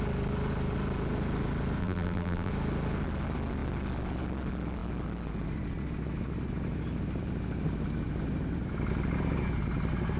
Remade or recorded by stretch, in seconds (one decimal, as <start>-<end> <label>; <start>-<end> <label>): 0.0-1.8 recorded; 1.8-2.5 remade; 2.5-10.2 recorded